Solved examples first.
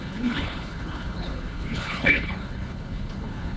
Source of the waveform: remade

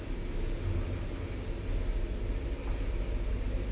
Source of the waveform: recorded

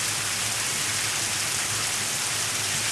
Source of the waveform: recorded